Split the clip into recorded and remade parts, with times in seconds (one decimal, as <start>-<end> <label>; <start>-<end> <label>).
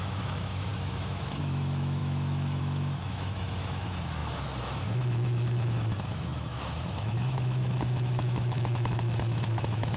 0.0-10.0 remade